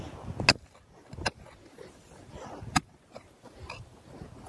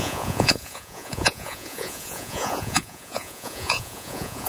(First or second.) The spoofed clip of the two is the second